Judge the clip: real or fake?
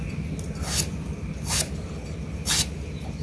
real